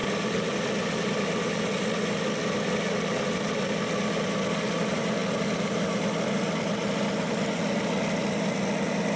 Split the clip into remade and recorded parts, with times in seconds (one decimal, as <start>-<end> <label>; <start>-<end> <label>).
0.0-9.2 recorded